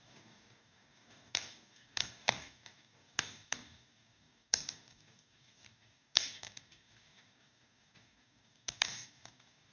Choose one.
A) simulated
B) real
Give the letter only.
A